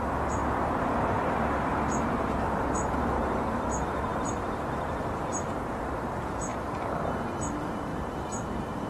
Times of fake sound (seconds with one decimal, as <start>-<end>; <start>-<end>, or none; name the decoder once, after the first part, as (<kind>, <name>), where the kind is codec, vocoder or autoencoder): 0.0-6.5 (vocoder, BigVGAN v2); 7.5-8.9